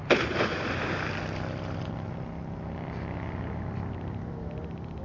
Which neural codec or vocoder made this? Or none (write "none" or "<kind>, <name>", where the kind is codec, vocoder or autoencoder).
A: none